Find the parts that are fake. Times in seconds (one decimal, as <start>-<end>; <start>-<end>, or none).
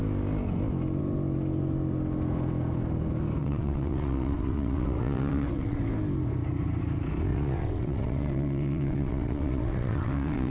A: 3.4-5.8; 7.3-10.5